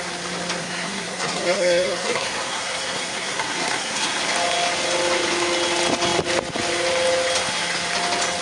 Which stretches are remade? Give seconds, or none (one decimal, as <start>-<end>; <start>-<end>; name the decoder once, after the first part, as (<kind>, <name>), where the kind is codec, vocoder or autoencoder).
0.6-4.2 (codec, SNAC)

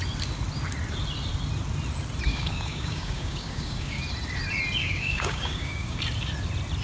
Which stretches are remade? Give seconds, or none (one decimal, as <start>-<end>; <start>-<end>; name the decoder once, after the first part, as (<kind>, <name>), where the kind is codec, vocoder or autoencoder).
2.3-4.0 (codec, DAC); 4.8-6.0

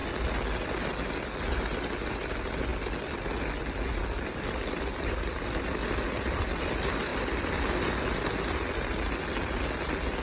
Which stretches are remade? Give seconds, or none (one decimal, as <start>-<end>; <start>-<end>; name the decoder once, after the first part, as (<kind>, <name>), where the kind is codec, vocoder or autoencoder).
none

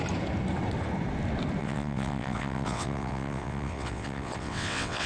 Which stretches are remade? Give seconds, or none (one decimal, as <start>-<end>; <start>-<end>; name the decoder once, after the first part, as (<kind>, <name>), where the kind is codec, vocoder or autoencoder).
1.6-5.1 (vocoder, WaveNeXt)

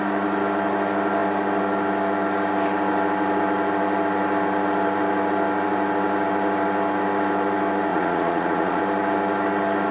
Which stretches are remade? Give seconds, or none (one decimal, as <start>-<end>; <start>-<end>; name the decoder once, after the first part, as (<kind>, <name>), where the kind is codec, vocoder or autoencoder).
7.9-8.8 (vocoder, Vocos)

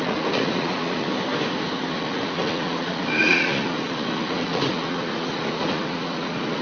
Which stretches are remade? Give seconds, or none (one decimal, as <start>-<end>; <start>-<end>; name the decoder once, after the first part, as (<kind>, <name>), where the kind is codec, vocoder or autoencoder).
0.0-1.1 (vocoder, Vocos); 1.9-6.6